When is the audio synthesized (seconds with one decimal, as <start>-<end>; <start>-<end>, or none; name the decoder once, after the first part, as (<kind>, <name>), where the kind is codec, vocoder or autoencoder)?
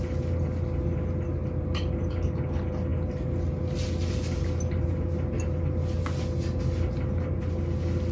none